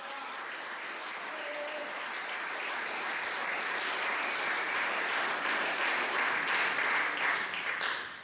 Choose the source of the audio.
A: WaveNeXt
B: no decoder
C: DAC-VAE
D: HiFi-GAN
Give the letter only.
B